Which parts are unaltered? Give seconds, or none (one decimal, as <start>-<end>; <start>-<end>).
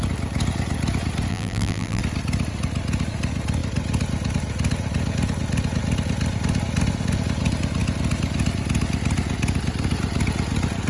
0.0-1.3; 2.0-10.9